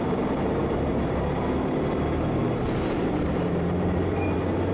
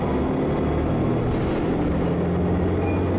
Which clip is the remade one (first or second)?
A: first